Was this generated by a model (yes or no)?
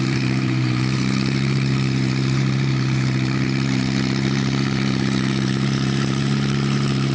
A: yes